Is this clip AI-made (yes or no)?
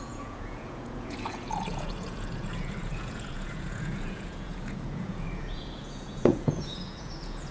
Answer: yes